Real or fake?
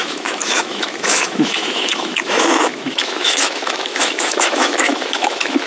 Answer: fake